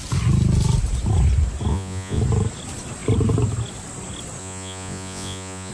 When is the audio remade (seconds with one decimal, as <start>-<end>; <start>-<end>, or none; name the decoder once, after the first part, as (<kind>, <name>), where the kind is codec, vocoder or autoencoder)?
1.7-2.2 (vocoder, Vocos); 4.4-5.7